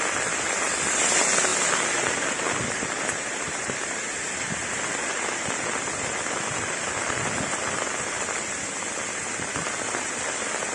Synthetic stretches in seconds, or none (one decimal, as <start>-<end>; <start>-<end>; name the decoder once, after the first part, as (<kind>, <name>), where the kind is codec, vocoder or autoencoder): none